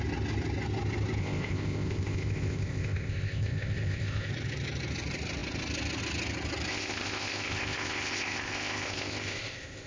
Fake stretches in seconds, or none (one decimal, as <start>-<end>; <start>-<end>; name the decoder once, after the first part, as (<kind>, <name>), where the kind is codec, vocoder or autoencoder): 1.2-4.3 (codec, ZipCodec); 6.7-9.9